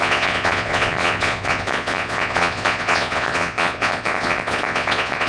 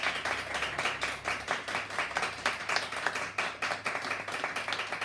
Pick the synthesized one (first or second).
first